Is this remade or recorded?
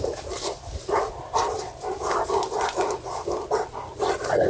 recorded